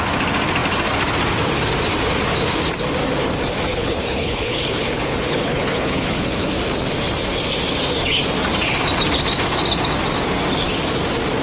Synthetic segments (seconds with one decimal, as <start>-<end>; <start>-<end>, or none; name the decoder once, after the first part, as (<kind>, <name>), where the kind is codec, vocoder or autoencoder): 3.7-6.5 (codec, HILCodec)